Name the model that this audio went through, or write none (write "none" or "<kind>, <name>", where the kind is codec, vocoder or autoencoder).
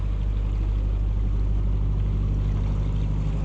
none